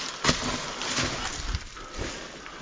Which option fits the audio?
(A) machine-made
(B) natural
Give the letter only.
B